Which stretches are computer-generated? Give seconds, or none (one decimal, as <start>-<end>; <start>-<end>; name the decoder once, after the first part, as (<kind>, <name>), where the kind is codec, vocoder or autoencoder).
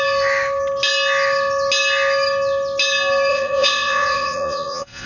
3.3-5.1 (vocoder, Vocos)